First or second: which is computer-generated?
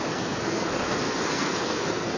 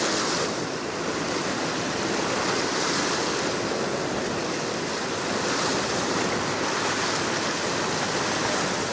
first